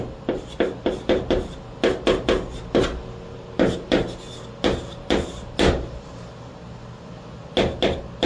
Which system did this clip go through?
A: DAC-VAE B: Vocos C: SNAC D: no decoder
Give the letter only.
D